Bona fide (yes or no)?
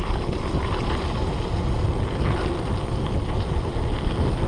yes